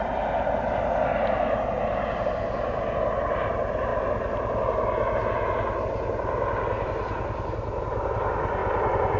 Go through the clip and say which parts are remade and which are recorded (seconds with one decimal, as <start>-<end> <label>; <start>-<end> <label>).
0.0-9.2 recorded